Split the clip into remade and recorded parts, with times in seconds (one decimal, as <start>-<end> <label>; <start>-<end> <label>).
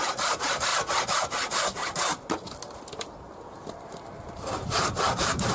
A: 0.0-0.7 remade; 0.7-3.7 recorded; 3.7-5.5 remade